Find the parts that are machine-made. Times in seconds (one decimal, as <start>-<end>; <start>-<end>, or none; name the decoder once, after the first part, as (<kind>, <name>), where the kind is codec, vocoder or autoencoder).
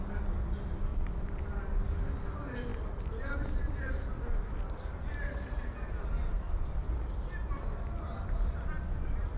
0.9-1.4 (vocoder, BigVGAN v2); 2.7-5.9